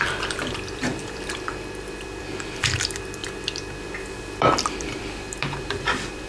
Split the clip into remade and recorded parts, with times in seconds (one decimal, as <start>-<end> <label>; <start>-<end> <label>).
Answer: 0.0-3.2 remade; 3.2-3.8 recorded; 3.8-6.3 remade